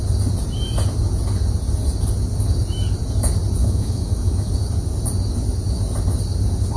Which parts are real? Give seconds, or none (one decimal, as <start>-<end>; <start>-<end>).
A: 0.0-3.6; 4.5-6.8